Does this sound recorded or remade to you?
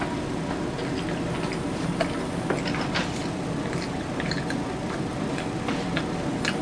recorded